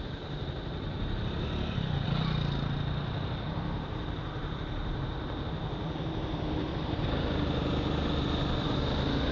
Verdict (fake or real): real